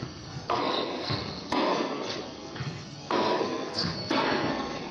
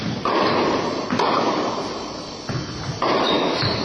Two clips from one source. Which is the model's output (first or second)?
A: first